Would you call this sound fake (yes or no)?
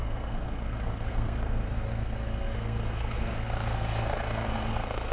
yes